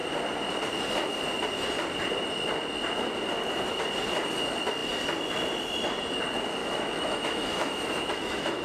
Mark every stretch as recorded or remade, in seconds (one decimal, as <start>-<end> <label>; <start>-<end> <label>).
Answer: 0.0-6.6 recorded; 6.6-8.6 remade